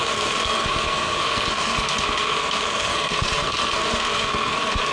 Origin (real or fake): fake